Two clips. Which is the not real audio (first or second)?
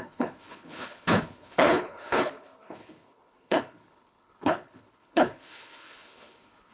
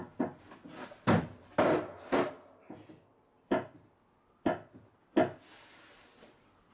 first